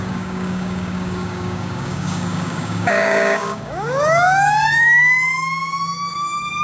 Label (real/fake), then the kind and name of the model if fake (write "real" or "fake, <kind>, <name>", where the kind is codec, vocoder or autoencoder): fake, codec, DAC